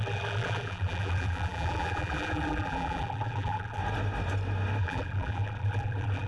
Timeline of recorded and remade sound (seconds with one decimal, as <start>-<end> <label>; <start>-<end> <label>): 0.0-3.8 remade; 3.8-4.8 recorded; 4.8-6.3 remade